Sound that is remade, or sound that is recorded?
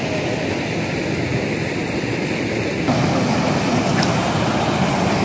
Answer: recorded